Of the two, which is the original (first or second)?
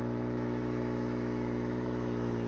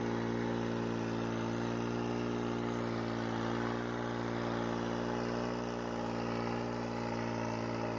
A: second